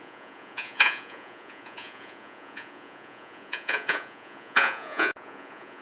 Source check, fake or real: fake